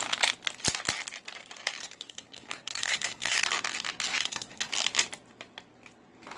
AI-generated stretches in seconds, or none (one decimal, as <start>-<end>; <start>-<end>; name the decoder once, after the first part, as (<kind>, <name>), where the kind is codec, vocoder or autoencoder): 1.8-3.5 (codec, SNAC); 4.1-4.7